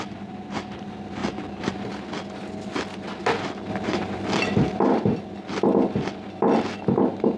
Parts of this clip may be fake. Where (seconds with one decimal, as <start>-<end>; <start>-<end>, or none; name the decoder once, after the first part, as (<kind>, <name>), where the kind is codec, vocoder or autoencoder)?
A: 1.2-1.8 (vocoder, BigVGAN v2); 3.7-4.8